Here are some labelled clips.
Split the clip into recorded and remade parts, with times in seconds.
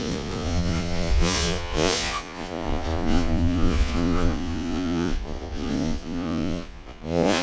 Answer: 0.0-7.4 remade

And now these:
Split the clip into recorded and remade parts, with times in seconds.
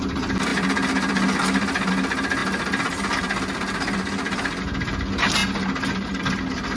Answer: 0.0-0.5 recorded; 0.5-1.9 remade; 1.9-2.4 recorded; 2.4-4.6 remade; 4.6-6.8 recorded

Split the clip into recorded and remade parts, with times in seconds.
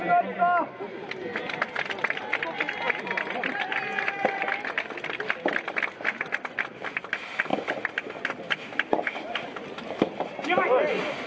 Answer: 0.0-11.3 recorded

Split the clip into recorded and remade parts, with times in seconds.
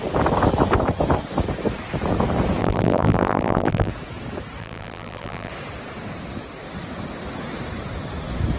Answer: 0.0-2.6 recorded; 2.6-3.9 remade; 3.9-4.6 recorded; 4.6-5.5 remade; 5.5-8.6 recorded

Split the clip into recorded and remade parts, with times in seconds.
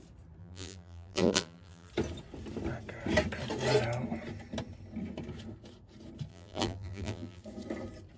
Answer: 0.0-0.4 recorded; 0.4-1.9 remade; 1.9-6.3 recorded; 6.3-7.4 remade; 7.4-8.2 recorded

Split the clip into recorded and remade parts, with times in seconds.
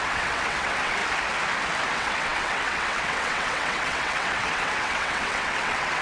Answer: 0.0-1.0 remade; 1.0-1.9 recorded; 1.9-6.0 remade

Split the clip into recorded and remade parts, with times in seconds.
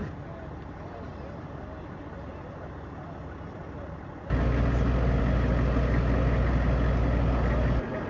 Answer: 0.0-8.1 recorded